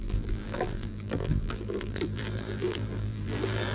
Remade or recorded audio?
remade